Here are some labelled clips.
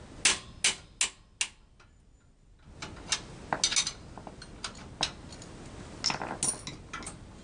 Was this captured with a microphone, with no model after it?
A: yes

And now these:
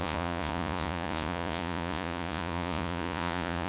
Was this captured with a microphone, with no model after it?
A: no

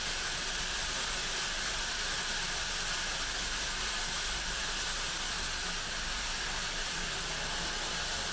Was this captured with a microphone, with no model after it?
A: yes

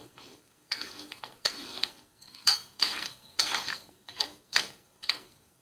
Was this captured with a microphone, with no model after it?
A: no